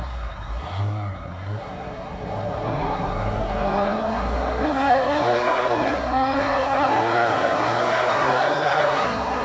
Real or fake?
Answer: fake